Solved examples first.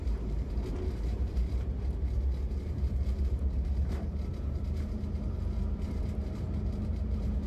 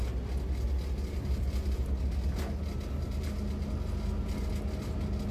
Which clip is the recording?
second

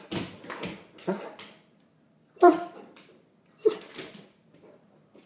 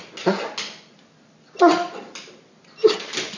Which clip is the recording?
second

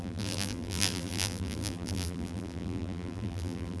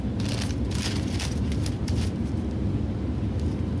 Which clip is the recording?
second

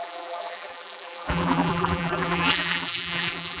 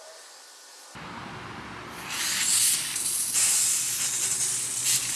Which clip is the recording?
second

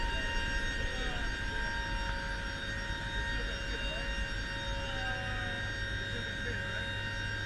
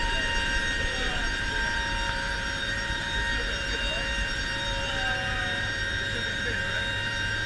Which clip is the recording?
first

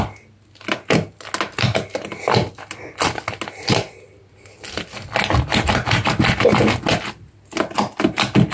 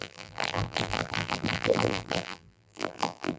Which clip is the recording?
first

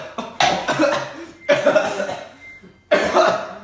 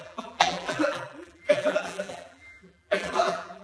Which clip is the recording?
first